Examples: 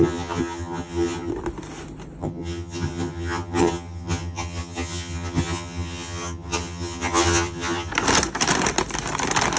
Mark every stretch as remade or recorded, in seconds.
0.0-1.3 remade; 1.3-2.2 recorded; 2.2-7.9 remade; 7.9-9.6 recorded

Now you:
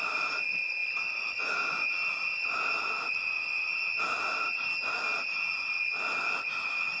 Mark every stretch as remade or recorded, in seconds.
0.0-7.0 recorded

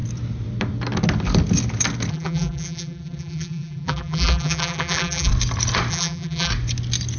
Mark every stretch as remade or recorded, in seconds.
0.0-2.1 recorded; 2.1-5.3 remade; 5.3-5.9 recorded; 5.9-6.5 remade; 6.5-7.2 recorded